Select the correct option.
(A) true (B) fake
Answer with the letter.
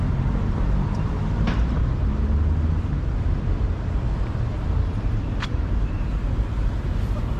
A